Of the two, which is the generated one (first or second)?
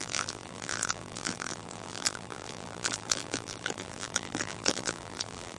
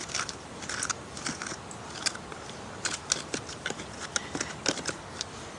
first